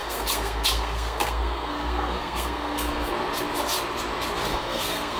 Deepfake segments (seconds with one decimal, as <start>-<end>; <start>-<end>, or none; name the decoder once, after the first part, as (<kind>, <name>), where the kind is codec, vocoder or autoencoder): 0.0-3.1 (codec, SNAC); 4.5-5.2